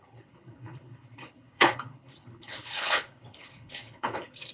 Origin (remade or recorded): remade